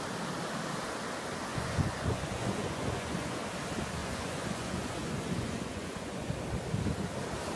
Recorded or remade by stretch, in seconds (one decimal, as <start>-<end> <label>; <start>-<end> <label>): 0.0-1.5 recorded; 1.5-3.4 remade; 3.4-4.0 recorded; 4.0-6.3 remade; 6.3-7.6 recorded